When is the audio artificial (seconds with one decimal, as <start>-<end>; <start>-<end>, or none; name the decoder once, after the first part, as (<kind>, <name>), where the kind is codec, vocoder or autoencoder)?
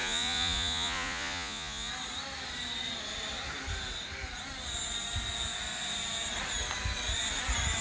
0.0-1.9 (vocoder, Vocos)